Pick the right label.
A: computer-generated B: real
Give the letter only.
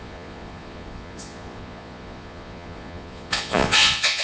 A